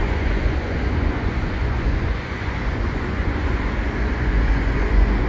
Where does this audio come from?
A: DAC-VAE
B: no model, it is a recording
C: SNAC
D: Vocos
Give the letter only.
D